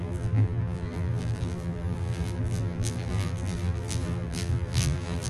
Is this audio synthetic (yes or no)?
yes